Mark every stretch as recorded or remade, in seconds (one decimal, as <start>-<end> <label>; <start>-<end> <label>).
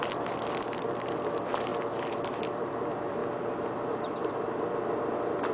0.0-3.2 remade; 3.2-3.7 recorded; 3.7-5.5 remade